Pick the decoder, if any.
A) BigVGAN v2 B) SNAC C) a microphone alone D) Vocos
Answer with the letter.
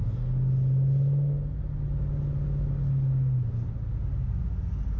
C